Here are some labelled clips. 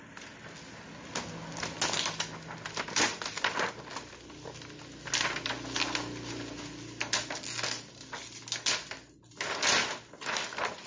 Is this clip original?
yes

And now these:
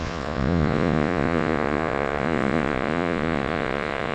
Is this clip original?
no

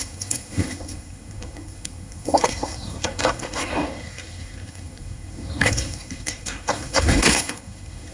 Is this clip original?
no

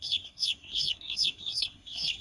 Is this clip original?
no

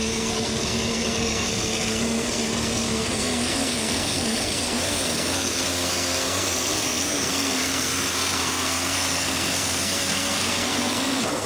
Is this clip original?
no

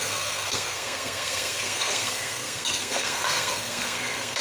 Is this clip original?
no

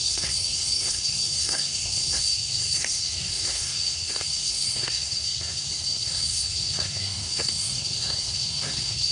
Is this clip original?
no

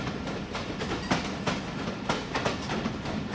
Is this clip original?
yes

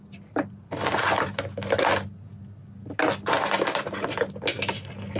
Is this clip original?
yes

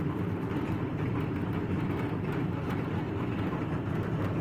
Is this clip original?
no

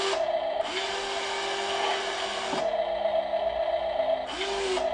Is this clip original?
yes